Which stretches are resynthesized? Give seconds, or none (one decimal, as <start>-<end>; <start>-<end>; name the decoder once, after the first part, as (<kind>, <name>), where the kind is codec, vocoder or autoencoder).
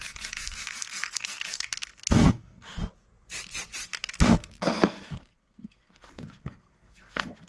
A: 0.0-2.8 (codec, SNAC); 4.2-7.5